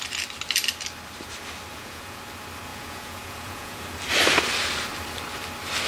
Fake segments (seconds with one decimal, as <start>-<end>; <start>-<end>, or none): 1.7-2.2; 2.7-3.8